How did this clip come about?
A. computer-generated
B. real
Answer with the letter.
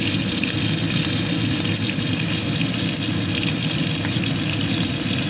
B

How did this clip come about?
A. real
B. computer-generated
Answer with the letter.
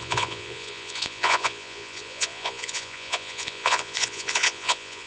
B